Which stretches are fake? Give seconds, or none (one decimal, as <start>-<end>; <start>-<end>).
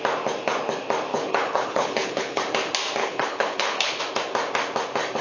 1.1-2.4; 3.0-4.0